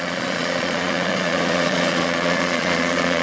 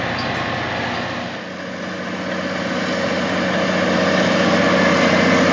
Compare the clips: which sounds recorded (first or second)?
second